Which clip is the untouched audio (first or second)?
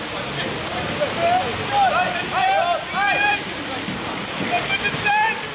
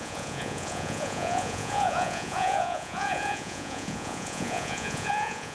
first